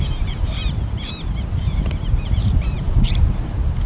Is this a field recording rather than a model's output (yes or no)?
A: no